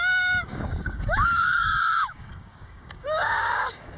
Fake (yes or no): yes